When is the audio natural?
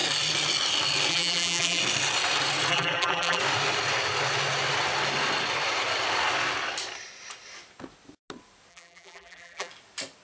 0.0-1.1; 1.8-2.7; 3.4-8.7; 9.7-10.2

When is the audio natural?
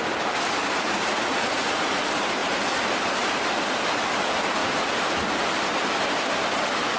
0.0-0.6; 2.0-7.0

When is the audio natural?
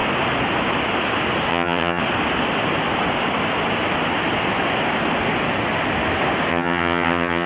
0.0-1.5; 2.0-6.5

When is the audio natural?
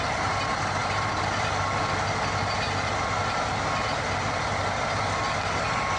0.0-6.0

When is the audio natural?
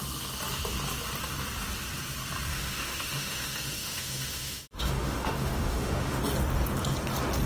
0.0-2.5; 6.2-7.5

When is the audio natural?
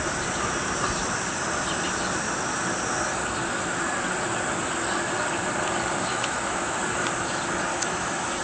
0.0-6.1; 6.8-7.7